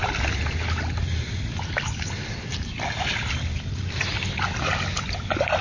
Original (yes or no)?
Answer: yes